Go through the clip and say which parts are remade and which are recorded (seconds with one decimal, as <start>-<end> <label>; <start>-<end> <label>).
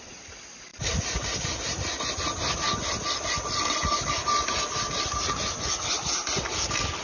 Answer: 0.0-0.7 recorded; 0.7-2.0 remade; 2.0-7.0 recorded